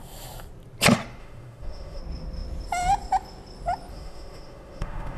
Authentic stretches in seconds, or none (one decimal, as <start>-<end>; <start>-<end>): 0.0-1.2; 2.0-3.9